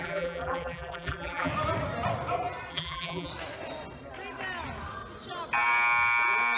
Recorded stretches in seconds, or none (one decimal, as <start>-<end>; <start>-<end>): 1.5-2.7; 3.3-6.6